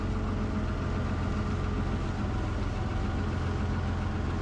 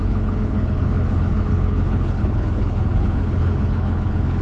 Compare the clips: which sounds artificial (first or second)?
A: second